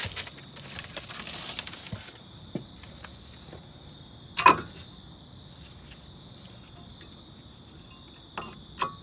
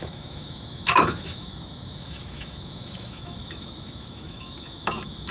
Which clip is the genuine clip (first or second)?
first